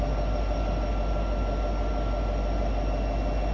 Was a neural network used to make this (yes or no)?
no